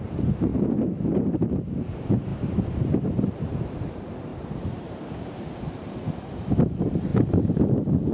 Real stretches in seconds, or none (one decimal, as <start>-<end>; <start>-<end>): 0.0-0.5; 1.1-4.3; 5.0-8.1